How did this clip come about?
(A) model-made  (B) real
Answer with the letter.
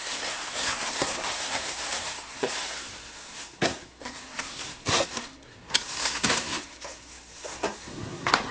A